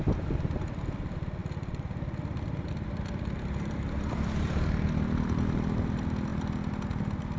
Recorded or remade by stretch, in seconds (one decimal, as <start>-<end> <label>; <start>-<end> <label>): 0.0-6.3 remade; 6.3-7.4 recorded